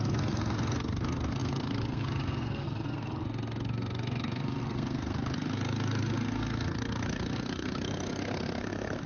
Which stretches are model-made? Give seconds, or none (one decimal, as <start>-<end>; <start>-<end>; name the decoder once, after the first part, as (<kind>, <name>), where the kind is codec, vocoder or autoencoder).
0.0-9.1 (codec, SNAC)